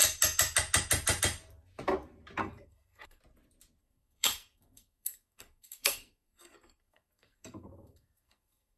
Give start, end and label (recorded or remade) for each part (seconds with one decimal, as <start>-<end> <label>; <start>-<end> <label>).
0.0-2.4 recorded; 2.4-3.2 remade; 3.2-3.8 recorded; 3.8-8.8 remade